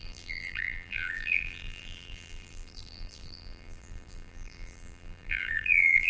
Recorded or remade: remade